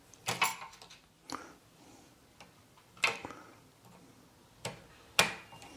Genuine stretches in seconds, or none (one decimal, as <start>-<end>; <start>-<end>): 0.0-5.8